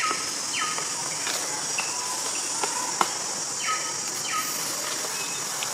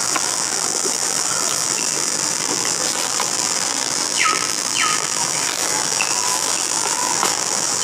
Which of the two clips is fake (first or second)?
second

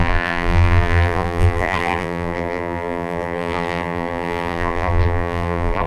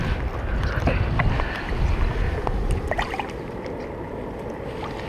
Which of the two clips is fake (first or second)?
first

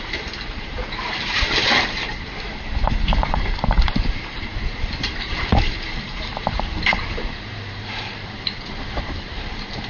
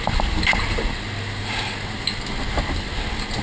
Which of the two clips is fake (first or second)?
first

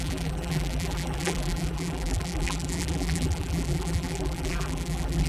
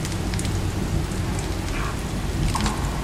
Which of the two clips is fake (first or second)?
first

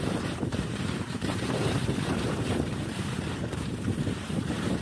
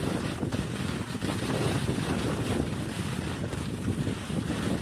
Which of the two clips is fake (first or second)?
first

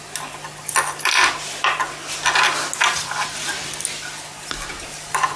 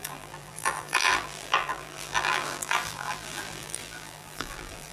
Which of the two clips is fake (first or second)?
second